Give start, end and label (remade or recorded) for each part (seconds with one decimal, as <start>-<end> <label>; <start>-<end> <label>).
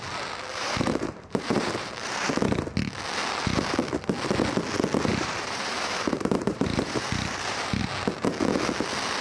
0.0-0.5 recorded; 0.5-2.3 remade; 2.3-5.1 recorded; 5.1-7.8 remade; 7.8-9.2 recorded